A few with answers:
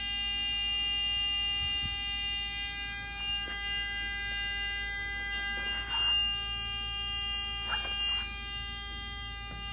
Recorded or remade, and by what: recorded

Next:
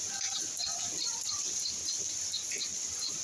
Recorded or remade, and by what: recorded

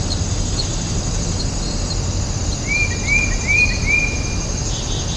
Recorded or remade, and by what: recorded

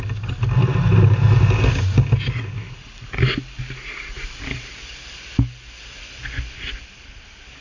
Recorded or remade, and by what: recorded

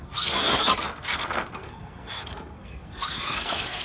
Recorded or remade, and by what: remade, codec, SNAC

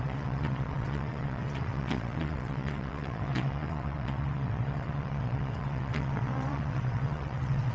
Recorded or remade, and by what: remade, vocoder, WaveNeXt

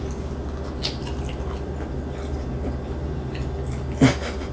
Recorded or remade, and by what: recorded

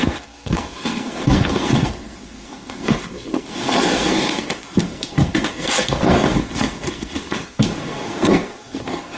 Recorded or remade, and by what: remade, codec, SNAC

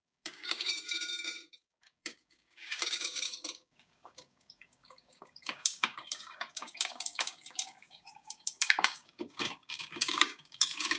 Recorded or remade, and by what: remade, codec, DAC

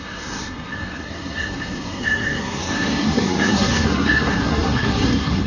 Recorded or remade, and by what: remade, codec, SNAC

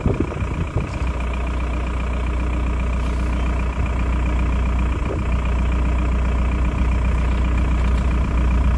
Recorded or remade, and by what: recorded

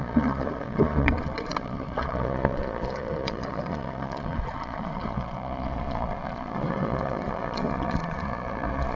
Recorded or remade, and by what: remade, vocoder, Vocos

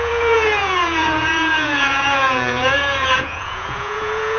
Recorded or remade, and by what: remade, vocoder, Vocos